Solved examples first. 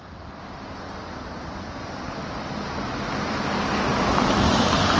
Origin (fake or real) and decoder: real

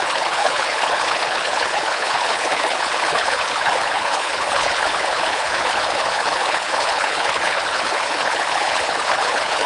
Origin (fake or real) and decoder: fake, codec, HILCodec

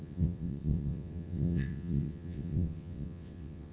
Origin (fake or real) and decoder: fake, vocoder, WaveNeXt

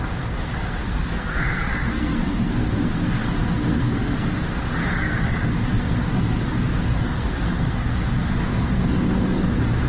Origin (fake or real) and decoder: fake, codec, SNAC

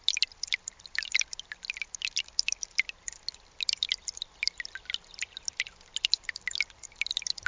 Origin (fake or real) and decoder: real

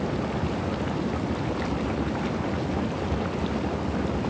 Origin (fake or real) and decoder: real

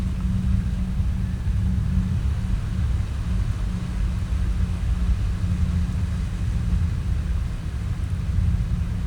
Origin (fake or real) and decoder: real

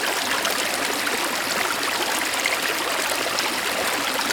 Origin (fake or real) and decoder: real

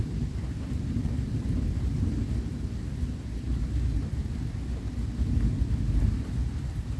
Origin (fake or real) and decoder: real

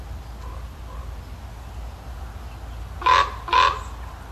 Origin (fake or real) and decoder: real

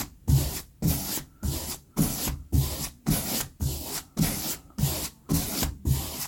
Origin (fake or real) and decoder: fake, vocoder, BigVGAN v2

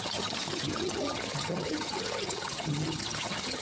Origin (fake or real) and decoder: fake, vocoder, HiFi-GAN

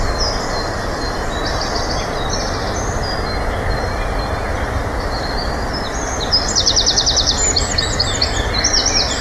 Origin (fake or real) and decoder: real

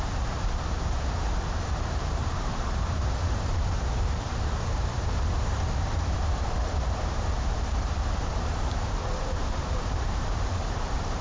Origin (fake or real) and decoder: fake, vocoder, BigVGAN v2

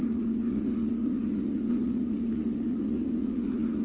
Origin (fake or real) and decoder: fake, vocoder, Vocos